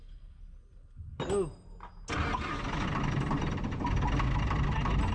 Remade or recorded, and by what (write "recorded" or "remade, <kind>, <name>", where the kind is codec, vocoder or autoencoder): recorded